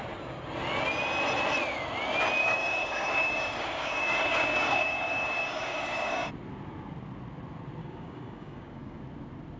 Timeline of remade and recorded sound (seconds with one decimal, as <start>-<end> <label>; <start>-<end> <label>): 0.0-2.4 recorded; 2.4-6.3 remade; 6.3-7.8 recorded; 7.8-9.0 remade; 9.0-9.6 recorded